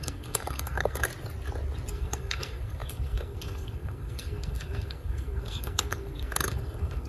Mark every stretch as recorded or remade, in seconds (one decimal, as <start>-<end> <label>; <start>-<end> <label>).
0.0-1.1 remade; 1.1-1.9 recorded; 1.9-7.1 remade